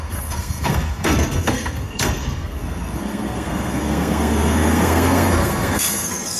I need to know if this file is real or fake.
fake